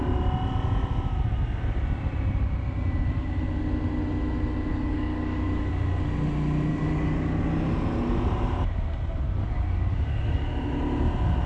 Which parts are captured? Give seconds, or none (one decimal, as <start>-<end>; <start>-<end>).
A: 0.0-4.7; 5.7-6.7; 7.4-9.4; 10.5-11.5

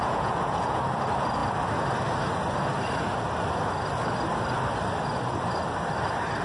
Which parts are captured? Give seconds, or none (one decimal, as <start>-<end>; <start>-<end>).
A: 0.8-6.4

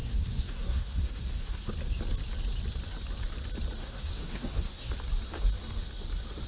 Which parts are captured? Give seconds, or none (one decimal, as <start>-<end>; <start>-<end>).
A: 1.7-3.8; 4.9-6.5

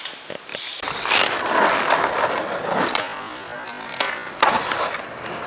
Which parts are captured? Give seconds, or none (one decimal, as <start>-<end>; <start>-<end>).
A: 0.0-0.5; 1.0-5.5

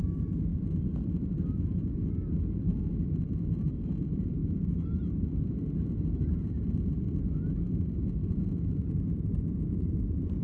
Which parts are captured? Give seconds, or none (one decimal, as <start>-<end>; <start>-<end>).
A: 2.0-3.5; 8.2-9.1